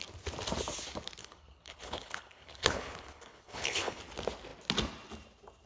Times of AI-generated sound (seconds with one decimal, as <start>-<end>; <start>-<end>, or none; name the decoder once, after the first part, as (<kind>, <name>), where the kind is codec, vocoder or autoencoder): 1.2-4.0 (codec, HILCodec)